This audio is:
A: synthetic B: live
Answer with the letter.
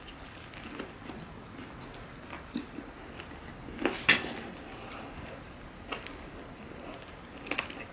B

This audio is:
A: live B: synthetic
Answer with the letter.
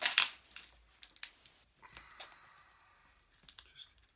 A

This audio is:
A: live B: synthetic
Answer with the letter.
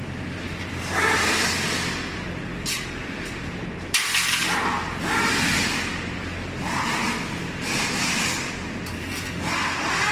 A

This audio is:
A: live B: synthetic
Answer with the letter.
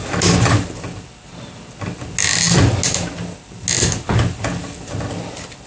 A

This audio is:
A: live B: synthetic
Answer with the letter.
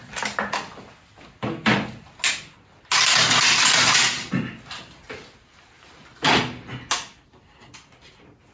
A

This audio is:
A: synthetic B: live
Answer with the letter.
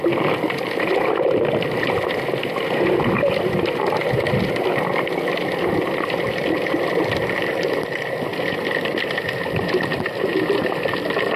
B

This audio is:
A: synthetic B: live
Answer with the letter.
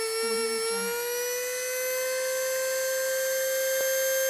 B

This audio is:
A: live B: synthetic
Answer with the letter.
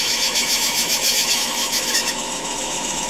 B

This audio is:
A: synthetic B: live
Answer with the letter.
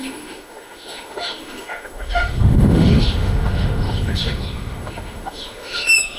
A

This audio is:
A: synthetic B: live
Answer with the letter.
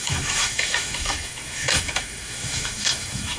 A